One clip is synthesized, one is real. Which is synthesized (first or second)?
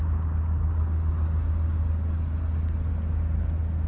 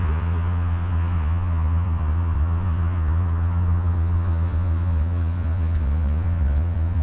second